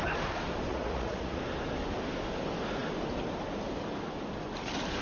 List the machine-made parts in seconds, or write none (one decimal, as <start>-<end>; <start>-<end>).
0.7-1.4